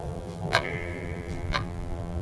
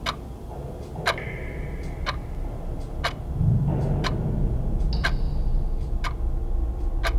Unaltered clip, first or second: second